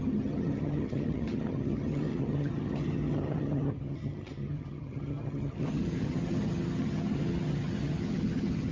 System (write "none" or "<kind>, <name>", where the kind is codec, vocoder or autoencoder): vocoder, HiFi-GAN